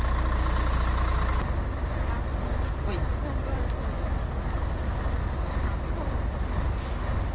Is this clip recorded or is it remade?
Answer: recorded